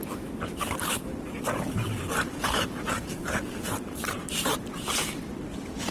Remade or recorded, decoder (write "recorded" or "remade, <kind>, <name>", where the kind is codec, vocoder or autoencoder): remade, vocoder, BigVGAN v2